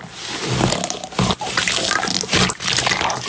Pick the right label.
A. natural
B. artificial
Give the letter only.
A